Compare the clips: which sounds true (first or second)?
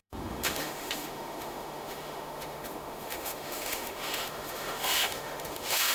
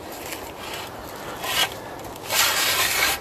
second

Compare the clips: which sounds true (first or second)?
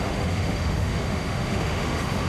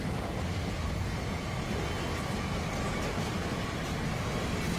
second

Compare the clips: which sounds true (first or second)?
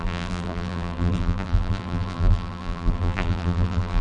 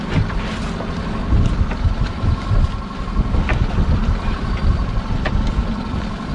second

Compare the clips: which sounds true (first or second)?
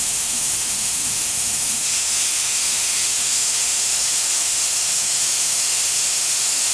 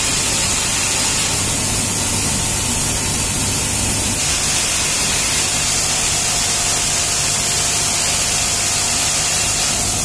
second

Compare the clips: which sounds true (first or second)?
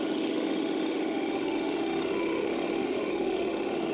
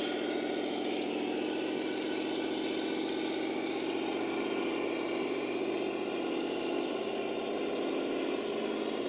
second